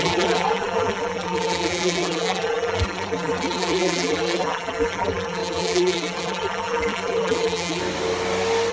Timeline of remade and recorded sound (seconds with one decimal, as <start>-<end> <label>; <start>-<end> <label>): 0.0-7.8 remade; 7.8-8.7 recorded